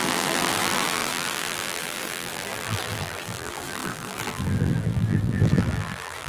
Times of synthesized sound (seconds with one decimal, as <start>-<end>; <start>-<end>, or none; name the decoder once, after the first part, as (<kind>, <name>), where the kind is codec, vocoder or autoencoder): 0.0-6.3 (vocoder, BigVGAN v2)